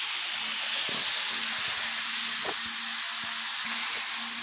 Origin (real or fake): real